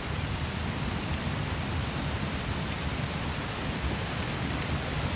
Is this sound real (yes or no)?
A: yes